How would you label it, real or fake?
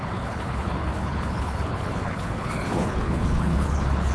fake